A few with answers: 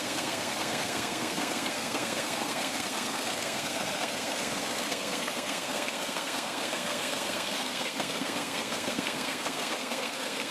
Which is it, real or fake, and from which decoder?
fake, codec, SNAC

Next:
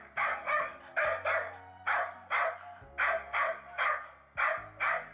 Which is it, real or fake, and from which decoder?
real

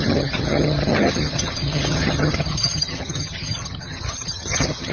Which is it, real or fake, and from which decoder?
fake, vocoder, HiFi-GAN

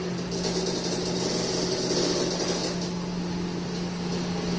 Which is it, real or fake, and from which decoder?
real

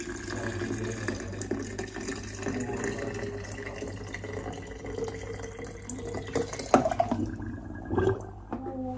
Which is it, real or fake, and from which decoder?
real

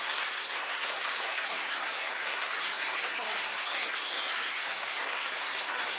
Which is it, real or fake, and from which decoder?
fake, codec, SNAC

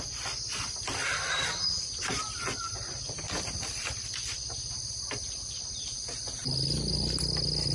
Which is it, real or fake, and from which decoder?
real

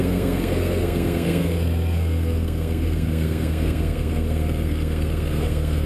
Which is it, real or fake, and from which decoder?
fake, codec, SNAC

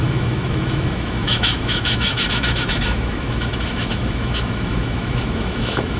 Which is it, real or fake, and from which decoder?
fake, autoencoder, DAC-VAE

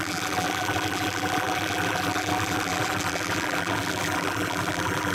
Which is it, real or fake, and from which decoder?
fake, vocoder, BigVGAN v2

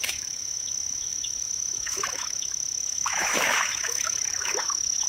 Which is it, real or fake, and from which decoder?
fake, autoencoder, DAC-VAE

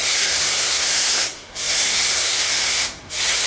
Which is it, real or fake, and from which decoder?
fake, codec, SNAC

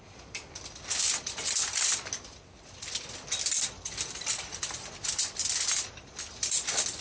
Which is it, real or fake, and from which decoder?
real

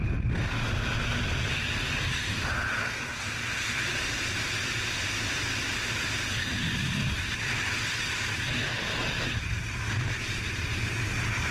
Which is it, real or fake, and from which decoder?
real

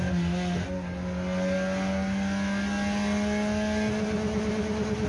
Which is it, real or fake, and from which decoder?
real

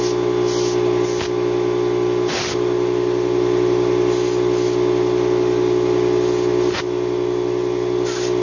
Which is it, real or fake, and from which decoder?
real